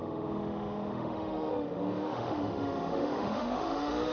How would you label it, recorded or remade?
remade